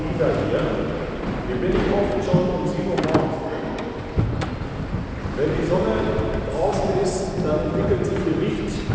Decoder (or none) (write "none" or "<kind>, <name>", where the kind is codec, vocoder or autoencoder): none